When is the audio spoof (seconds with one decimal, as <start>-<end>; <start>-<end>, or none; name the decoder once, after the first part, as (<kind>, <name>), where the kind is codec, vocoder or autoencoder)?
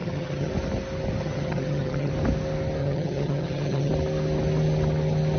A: 0.0-0.5 (vocoder, HiFi-GAN); 1.2-2.1; 2.8-3.9